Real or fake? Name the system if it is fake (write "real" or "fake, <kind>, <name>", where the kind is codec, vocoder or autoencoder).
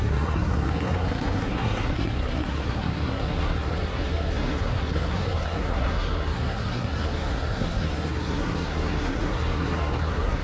fake, codec, SNAC